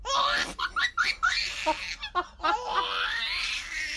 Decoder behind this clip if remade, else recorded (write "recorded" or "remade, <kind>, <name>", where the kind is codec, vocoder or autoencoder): recorded